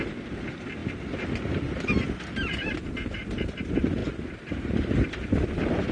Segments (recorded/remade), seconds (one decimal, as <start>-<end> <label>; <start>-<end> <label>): 0.0-5.9 recorded